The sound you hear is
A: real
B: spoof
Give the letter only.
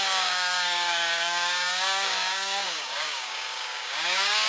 B